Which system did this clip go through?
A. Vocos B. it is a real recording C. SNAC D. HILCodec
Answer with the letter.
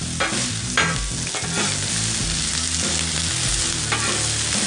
B